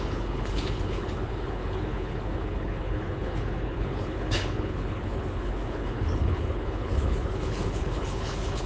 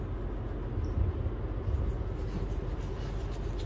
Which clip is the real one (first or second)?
second